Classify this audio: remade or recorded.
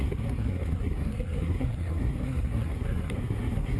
remade